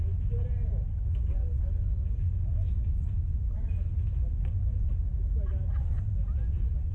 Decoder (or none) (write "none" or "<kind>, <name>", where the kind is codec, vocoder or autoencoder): none